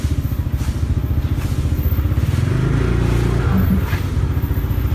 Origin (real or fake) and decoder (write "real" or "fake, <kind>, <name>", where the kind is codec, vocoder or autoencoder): real